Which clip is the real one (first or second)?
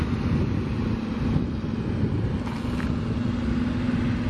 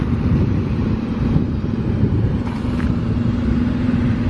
first